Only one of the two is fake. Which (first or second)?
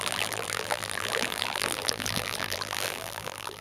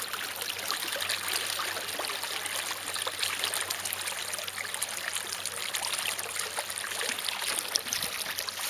first